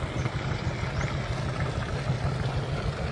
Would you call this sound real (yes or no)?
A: yes